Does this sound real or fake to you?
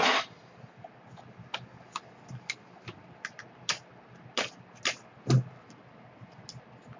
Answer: real